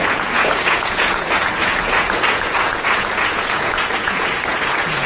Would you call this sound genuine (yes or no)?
no